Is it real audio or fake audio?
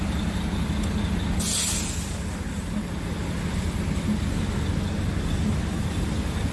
real